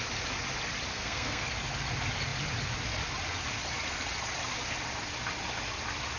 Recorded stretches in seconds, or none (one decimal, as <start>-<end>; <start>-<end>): 0.0-0.9; 1.5-6.2

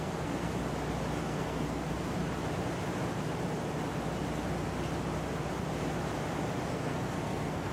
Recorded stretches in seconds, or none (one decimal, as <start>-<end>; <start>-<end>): 0.6-1.2; 2.2-6.6